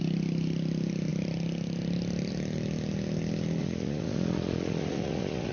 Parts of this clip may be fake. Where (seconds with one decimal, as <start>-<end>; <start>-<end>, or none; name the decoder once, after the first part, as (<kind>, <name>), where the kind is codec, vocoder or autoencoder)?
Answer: 3.6-5.5 (vocoder, Vocos)